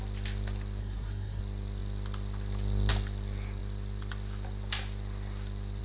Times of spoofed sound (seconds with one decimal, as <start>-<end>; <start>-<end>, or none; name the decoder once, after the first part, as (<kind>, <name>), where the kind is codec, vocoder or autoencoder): 0.8-1.4 (codec, SNAC)